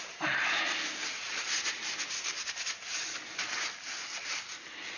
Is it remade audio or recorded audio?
recorded